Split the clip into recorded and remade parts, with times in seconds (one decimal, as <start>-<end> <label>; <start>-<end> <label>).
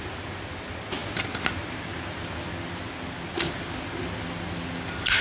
0.0-5.2 recorded